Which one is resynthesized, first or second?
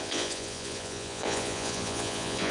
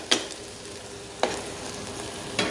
first